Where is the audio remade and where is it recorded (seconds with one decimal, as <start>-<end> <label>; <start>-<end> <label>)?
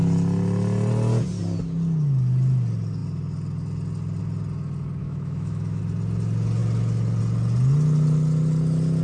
0.0-5.0 recorded; 5.0-5.8 remade; 5.8-9.0 recorded